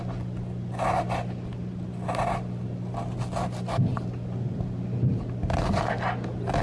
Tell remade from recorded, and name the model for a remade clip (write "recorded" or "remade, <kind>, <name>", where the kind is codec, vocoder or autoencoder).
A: recorded